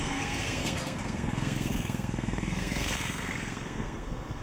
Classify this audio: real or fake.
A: fake